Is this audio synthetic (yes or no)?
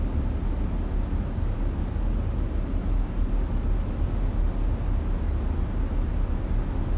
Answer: no